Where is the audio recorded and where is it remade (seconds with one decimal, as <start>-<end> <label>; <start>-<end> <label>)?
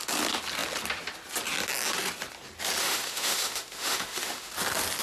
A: 0.0-2.8 recorded; 2.8-4.5 remade; 4.5-5.0 recorded